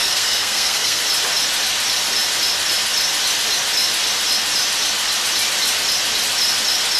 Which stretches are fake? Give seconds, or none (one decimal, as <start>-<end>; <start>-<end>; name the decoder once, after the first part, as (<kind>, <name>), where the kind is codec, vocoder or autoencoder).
0.0-1.0 (codec, SNAC)